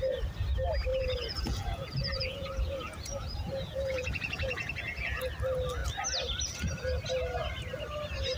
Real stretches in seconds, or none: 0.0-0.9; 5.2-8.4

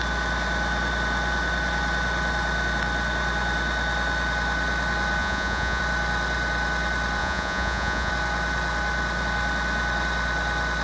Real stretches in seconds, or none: 0.0-5.2; 5.8-7.2; 8.1-10.8